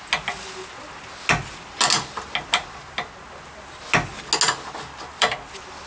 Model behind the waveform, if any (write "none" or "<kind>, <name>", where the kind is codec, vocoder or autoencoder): none